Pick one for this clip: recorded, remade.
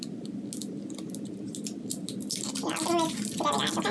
recorded